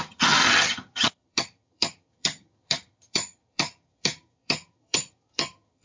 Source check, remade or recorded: remade